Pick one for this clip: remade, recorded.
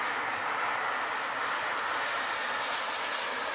recorded